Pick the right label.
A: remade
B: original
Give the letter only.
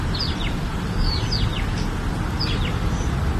B